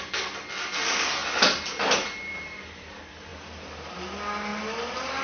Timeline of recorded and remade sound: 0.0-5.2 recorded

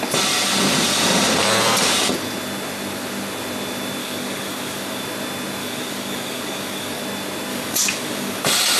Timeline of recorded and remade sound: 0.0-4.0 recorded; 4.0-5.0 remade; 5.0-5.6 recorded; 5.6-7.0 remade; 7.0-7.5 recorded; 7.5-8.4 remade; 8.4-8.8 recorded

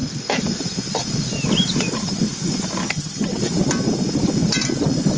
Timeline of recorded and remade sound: 0.0-2.8 recorded; 2.8-3.4 remade; 3.4-5.2 recorded